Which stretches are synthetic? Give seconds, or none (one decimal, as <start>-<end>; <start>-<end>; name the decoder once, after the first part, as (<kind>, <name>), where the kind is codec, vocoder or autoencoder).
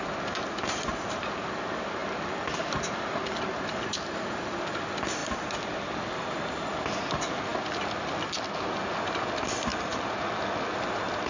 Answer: none